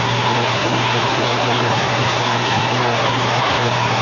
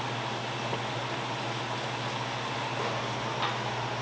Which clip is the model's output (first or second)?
first